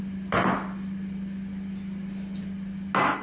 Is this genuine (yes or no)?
yes